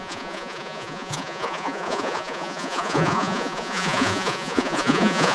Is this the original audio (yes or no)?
no